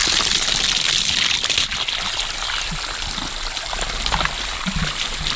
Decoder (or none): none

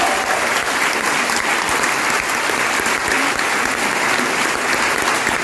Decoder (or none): none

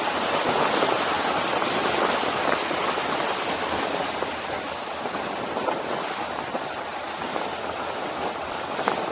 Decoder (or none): none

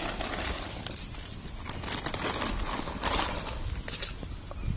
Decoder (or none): none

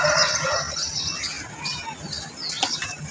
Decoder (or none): none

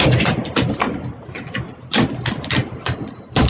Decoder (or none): none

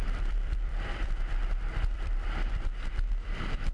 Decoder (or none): vocoder, BigVGAN v2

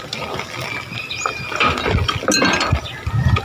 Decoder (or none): none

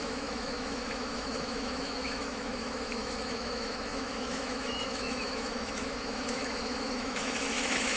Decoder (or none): autoencoder, DAC-VAE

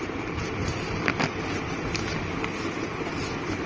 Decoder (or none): none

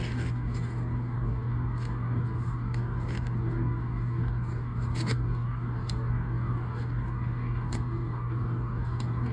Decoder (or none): codec, DAC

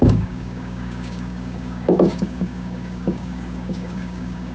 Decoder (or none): codec, DAC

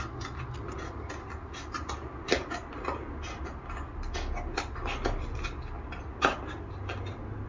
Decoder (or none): none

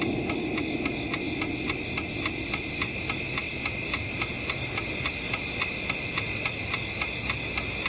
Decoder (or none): none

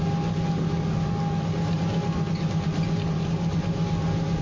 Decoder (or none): none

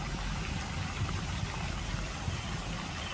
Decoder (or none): none